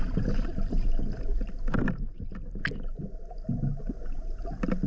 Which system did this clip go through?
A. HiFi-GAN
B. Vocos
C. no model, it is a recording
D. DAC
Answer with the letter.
C